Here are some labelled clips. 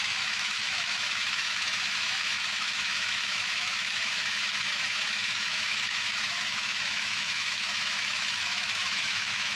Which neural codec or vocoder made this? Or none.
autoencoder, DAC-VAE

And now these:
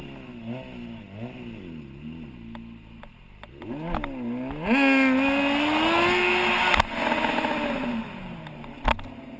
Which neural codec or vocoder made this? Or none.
none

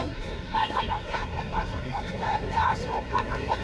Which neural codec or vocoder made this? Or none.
codec, SNAC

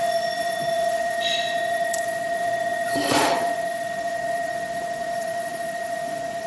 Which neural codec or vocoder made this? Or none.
vocoder, Vocos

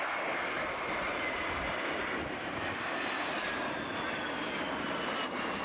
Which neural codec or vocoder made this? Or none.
none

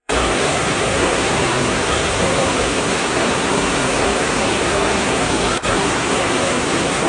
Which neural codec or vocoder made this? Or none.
codec, SNAC